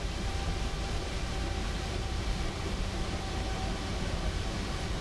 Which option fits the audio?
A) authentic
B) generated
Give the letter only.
B